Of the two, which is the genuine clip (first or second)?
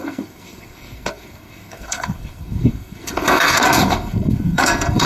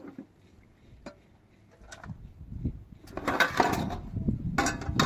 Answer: second